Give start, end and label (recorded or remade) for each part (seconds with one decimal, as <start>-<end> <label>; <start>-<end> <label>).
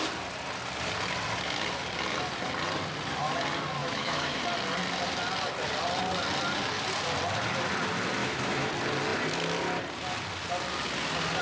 0.0-3.8 recorded; 3.8-4.4 remade; 4.4-8.2 recorded; 8.2-8.7 remade; 8.7-11.4 recorded